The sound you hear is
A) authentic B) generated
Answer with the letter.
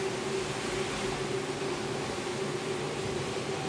A